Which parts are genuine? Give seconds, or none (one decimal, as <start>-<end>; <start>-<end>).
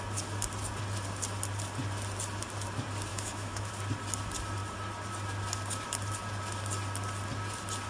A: 0.0-3.1; 3.7-7.9